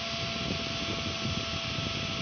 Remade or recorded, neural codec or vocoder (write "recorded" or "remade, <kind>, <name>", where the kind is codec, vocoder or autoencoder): recorded